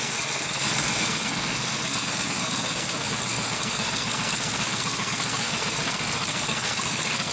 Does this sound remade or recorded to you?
remade